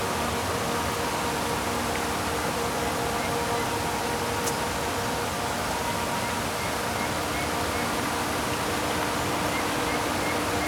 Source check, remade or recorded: recorded